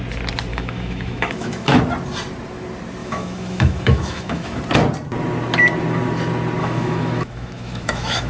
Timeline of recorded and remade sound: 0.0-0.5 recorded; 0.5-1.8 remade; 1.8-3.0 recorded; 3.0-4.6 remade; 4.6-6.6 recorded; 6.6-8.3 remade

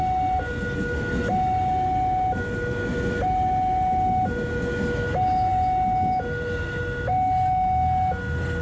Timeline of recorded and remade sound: 0.0-8.6 recorded

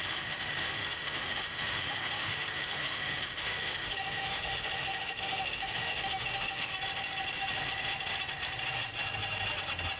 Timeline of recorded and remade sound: 0.0-6.7 remade; 6.7-10.0 recorded

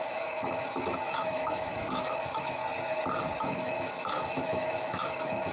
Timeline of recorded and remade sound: 0.0-2.6 remade; 2.6-3.4 recorded; 3.4-5.5 remade

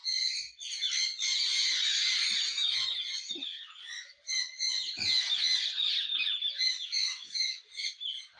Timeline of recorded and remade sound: 0.0-7.0 recorded; 7.0-7.6 remade; 7.6-8.4 recorded